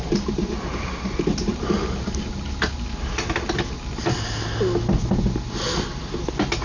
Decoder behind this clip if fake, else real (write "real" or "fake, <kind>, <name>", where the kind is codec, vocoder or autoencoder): real